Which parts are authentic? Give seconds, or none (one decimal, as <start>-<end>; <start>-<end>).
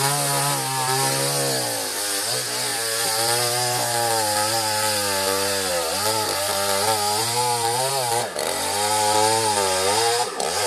0.0-10.7